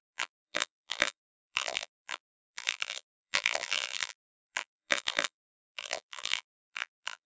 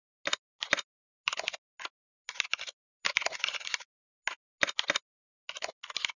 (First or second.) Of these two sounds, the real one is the second